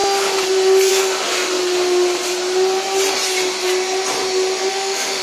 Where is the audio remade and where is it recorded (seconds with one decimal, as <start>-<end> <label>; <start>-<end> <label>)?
0.0-0.9 recorded; 0.9-1.6 remade; 1.6-4.7 recorded; 4.7-5.2 remade